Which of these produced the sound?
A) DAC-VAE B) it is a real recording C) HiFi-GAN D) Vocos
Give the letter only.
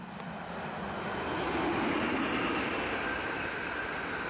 B